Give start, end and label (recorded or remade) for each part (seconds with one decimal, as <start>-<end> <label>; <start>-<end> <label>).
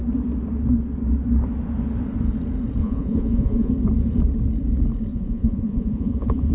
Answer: 0.0-2.8 recorded; 2.8-3.7 remade; 3.7-5.1 recorded; 5.1-6.5 remade